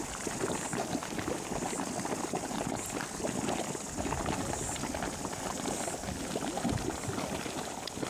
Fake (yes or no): no